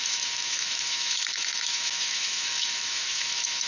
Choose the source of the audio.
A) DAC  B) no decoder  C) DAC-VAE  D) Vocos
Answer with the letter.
C